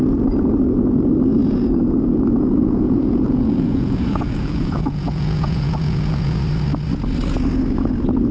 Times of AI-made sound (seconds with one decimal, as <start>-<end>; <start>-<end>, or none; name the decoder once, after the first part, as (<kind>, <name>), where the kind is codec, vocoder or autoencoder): 1.4-6.4 (vocoder, Vocos)